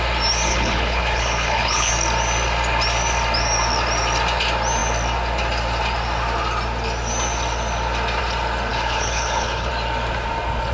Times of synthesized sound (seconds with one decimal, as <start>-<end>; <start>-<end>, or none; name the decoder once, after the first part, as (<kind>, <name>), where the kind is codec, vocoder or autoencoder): 0.5-1.9 (codec, HILCodec); 8.7-9.7